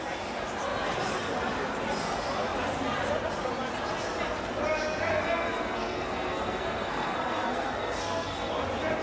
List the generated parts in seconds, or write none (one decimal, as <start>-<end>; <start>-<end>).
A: 5.1-8.5